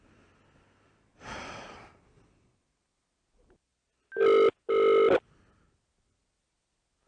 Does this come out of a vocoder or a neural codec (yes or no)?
no